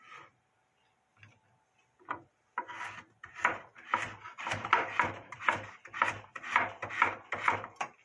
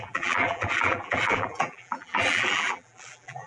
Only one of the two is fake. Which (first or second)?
second